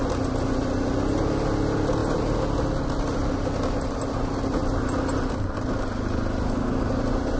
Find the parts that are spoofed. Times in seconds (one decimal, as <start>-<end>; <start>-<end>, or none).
none